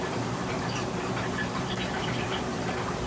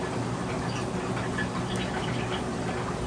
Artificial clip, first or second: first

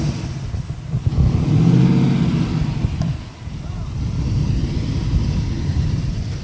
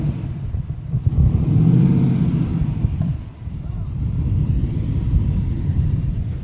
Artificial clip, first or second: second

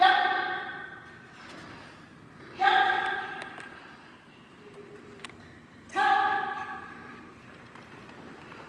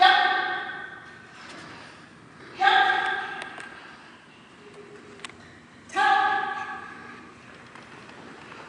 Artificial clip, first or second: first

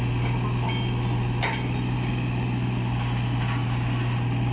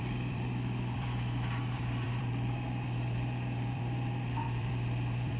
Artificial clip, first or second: second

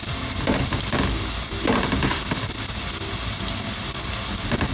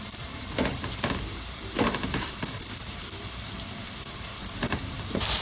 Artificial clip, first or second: second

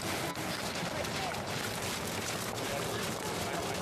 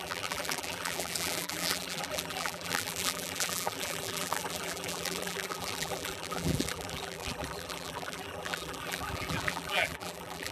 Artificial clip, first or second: second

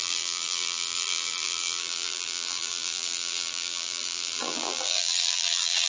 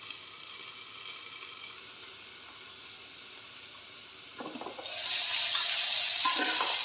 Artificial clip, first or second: first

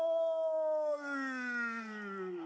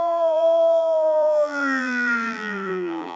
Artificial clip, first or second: second